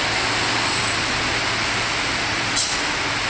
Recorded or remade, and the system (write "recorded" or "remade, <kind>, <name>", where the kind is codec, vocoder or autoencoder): recorded